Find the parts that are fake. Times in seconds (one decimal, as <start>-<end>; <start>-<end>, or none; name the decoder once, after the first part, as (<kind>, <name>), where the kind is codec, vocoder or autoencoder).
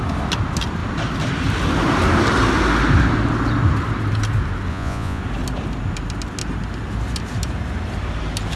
4.7-5.2 (vocoder, Vocos)